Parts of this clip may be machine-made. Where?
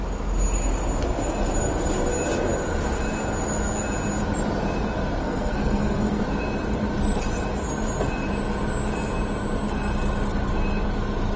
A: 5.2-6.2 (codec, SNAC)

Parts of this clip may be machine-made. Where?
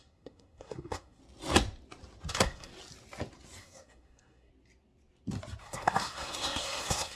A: 0.0-1.2 (codec, SNAC); 2.3-2.7; 3.6-4.5; 5.6-7.2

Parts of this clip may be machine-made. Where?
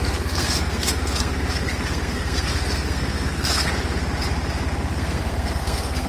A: 0.0-3.7 (codec, SNAC); 4.9-6.1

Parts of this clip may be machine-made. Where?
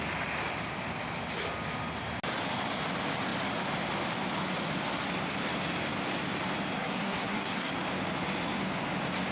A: 6.8-7.7 (codec, SNAC)